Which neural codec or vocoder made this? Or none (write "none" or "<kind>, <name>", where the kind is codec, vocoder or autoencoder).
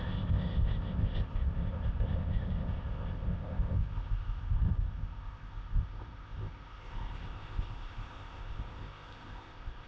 codec, ZipCodec